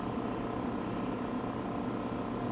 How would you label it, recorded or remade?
recorded